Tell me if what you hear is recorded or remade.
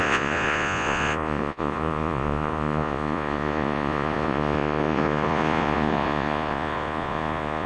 remade